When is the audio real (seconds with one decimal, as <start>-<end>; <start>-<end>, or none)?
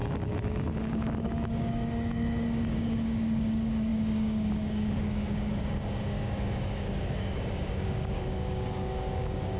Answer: none